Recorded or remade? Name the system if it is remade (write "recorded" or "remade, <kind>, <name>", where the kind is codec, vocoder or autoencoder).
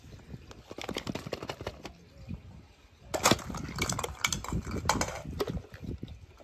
recorded